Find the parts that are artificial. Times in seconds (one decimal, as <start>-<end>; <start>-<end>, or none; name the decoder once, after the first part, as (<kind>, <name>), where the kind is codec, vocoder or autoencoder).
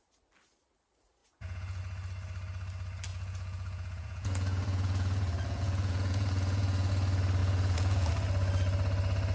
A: 1.2-1.8 (vocoder, Vocos); 3.1-6.9; 7.4-8.1